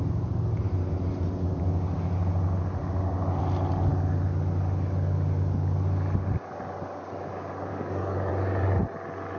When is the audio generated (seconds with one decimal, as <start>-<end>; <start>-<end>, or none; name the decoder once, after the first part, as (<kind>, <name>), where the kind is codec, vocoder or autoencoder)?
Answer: 7.7-8.3 (codec, DAC)